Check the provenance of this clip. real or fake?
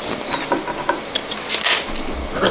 real